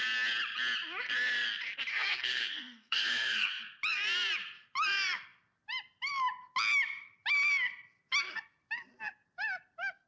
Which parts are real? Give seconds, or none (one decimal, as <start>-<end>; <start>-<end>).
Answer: 0.0-1.9; 3.6-10.1

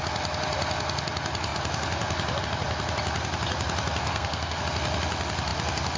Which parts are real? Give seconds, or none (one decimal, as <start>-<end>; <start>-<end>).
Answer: 0.0-4.0; 4.6-6.0

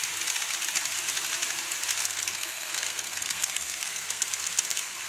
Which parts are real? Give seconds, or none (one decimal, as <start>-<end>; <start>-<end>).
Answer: 0.0-2.0

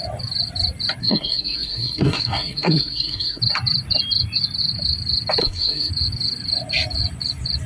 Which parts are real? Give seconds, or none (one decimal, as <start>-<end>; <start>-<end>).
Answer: 0.0-1.0; 3.4-5.4; 5.9-7.7